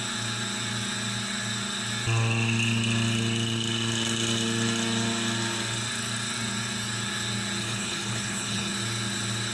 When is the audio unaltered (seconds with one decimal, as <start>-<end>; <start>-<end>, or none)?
0.0-7.6; 8.7-9.5